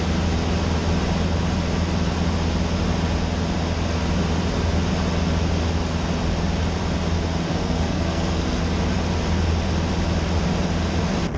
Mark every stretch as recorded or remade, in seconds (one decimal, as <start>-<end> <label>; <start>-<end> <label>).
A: 0.0-7.5 recorded; 7.5-8.6 remade; 8.6-11.4 recorded